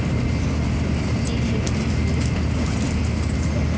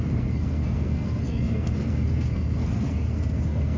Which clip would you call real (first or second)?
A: first